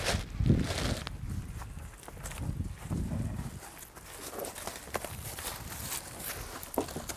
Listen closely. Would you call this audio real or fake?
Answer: real